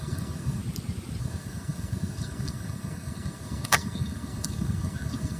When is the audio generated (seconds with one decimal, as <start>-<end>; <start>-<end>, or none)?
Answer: 0.0-0.6; 1.2-5.4